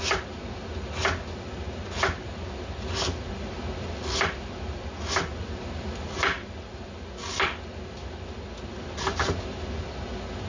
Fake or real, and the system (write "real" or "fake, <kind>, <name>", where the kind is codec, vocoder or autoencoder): real